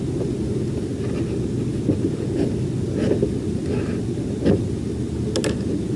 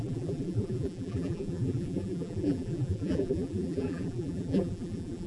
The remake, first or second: second